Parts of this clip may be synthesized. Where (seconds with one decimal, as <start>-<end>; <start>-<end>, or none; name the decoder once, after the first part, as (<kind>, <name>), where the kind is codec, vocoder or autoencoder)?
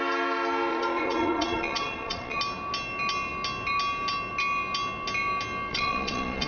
0.7-2.4 (vocoder, Vocos); 5.7-6.5